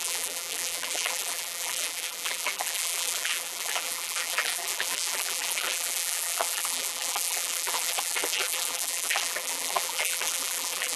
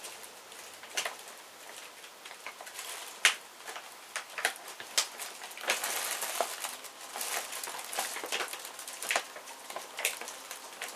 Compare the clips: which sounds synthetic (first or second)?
first